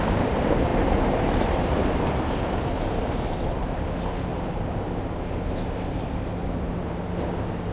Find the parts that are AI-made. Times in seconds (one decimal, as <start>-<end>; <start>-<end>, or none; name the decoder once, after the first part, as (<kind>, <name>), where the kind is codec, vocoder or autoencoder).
0.7-3.6 (vocoder, BigVGAN v2); 4.3-4.9; 6.4-7.0